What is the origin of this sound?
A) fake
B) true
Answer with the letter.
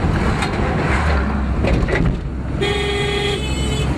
B